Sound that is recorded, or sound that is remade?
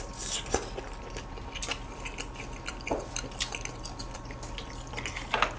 recorded